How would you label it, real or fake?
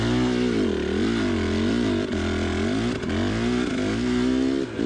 real